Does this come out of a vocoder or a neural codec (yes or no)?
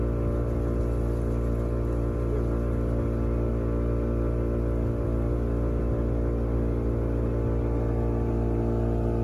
no